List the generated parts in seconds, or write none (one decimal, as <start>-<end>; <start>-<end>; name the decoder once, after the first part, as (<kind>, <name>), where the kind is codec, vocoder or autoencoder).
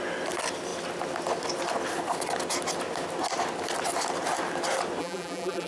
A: 5.0-5.7 (vocoder, BigVGAN v2)